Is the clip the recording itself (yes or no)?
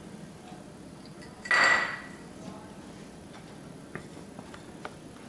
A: yes